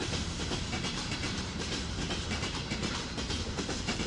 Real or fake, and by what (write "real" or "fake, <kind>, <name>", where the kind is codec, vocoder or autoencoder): fake, vocoder, BigVGAN v2